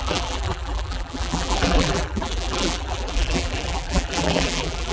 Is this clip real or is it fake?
fake